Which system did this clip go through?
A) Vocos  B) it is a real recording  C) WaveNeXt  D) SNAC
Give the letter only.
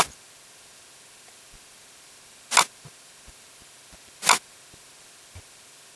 B